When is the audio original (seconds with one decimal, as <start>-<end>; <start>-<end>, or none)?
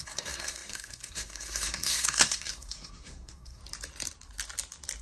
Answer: 3.6-5.0